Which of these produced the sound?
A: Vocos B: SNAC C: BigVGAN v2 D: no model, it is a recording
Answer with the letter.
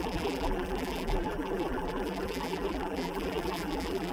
C